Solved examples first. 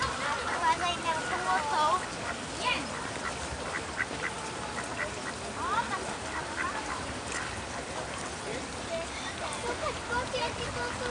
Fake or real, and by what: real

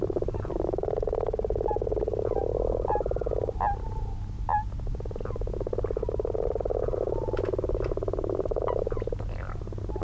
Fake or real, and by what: real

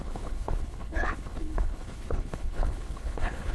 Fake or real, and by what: fake, codec, HILCodec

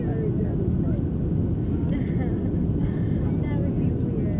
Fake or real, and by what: real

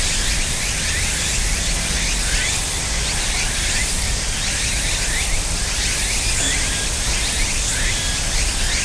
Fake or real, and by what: real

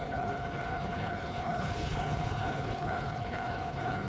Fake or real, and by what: fake, codec, HILCodec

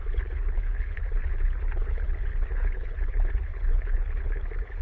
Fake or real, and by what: fake, codec, HILCodec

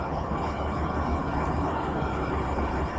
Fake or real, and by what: fake, codec, HILCodec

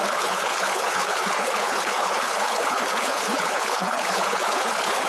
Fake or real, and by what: fake, codec, HILCodec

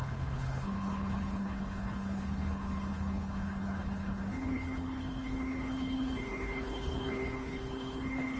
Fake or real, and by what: fake, codec, HILCodec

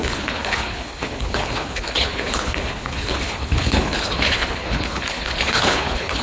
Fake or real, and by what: fake, codec, HILCodec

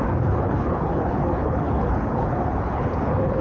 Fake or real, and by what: fake, codec, HILCodec